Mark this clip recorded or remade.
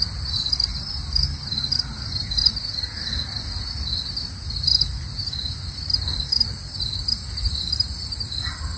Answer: recorded